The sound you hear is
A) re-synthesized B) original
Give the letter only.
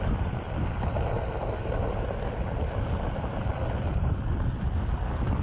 B